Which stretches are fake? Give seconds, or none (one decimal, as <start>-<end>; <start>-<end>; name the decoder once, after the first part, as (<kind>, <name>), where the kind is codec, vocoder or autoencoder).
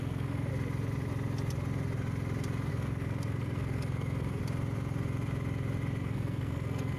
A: 0.0-0.5 (codec, SNAC); 2.7-4.4; 6.0-7.0